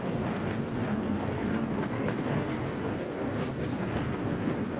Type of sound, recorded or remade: remade